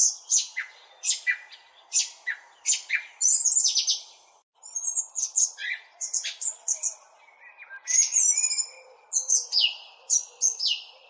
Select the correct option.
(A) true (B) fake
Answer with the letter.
A